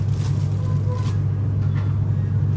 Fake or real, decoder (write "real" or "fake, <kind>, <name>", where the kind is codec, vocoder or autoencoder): real